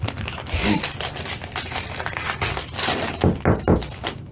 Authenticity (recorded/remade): recorded